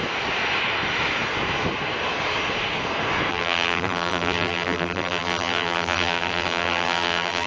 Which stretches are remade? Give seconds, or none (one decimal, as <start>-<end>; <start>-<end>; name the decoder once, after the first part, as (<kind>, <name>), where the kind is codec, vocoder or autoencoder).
3.3-7.5 (vocoder, BigVGAN v2)